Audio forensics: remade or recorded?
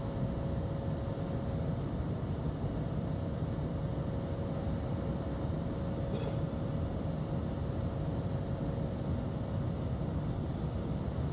recorded